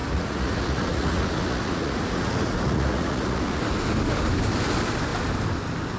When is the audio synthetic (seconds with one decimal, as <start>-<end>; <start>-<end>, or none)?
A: 0.0-3.6